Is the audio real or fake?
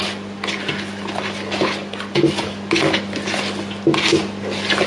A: real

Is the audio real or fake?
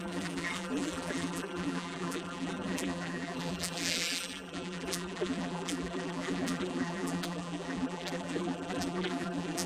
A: fake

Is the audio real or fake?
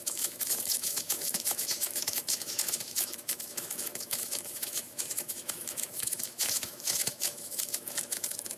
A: fake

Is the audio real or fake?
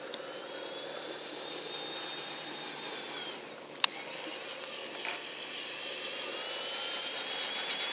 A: real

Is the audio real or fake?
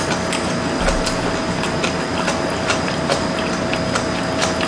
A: real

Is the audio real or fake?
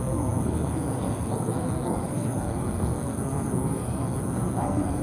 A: fake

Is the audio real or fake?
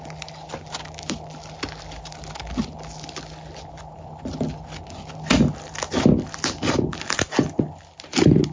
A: real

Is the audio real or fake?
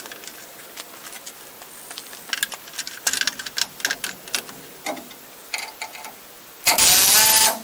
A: real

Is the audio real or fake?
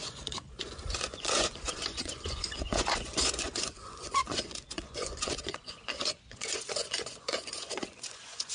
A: fake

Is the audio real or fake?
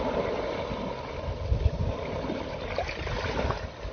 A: real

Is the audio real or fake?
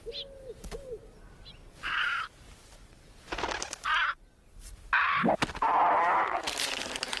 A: real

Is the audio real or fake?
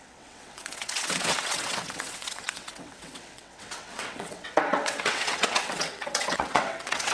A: fake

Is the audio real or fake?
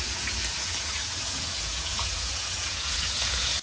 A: fake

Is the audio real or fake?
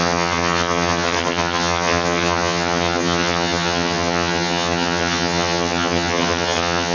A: fake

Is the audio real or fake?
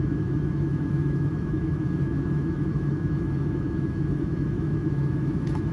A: fake